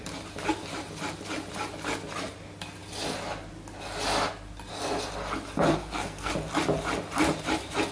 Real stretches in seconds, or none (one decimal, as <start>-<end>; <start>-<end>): 0.0-5.7; 6.3-7.9

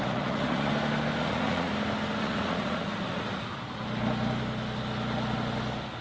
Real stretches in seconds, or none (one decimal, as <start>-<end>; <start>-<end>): 0.7-1.2; 1.7-2.2; 3.5-6.0

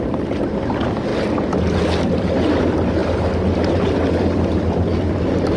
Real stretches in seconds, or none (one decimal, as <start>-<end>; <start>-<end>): 0.0-5.6

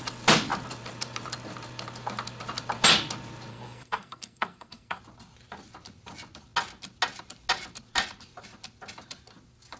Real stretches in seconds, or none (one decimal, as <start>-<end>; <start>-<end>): 0.0-3.5; 5.0-9.8

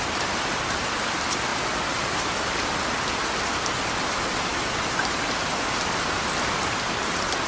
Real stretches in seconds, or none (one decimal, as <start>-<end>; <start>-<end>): 0.0-7.5

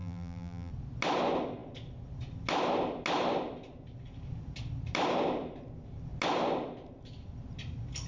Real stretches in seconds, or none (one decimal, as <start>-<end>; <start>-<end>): 0.7-8.1

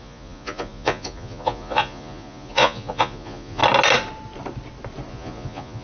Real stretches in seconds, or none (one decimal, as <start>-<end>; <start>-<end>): 3.6-5.1

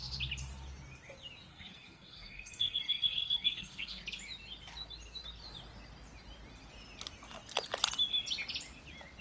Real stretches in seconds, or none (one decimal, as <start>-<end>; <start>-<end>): 0.0-1.5; 4.0-9.2